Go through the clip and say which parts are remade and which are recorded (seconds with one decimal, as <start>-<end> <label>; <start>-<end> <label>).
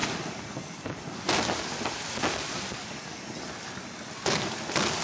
0.0-5.0 recorded